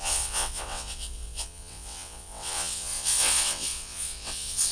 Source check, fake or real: fake